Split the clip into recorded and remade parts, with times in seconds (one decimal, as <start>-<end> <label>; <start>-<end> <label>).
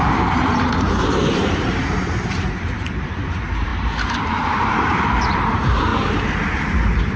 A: 0.0-5.9 remade; 5.9-7.2 recorded